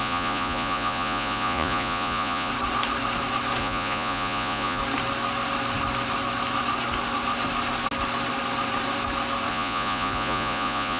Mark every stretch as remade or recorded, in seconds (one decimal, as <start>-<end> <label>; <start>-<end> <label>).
0.0-2.5 remade; 2.5-3.6 recorded; 3.6-4.8 remade; 4.8-9.5 recorded; 9.5-11.0 remade